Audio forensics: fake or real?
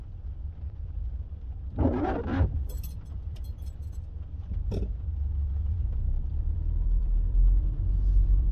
fake